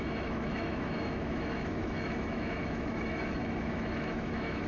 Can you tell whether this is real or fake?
fake